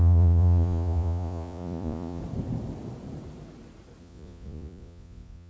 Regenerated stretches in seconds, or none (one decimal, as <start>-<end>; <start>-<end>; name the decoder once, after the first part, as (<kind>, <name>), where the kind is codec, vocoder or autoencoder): 0.0-2.2 (vocoder, Vocos); 4.0-5.5